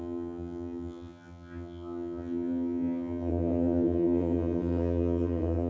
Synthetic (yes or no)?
yes